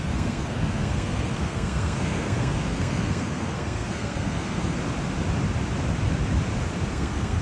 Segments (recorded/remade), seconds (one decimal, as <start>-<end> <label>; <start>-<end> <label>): 0.0-4.8 remade; 4.8-6.9 recorded; 6.9-7.4 remade